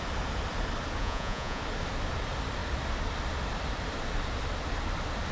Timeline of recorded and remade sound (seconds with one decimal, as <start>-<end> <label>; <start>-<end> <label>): 0.0-1.0 recorded; 1.0-1.6 remade; 1.6-5.3 recorded